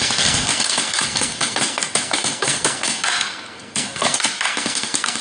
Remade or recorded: remade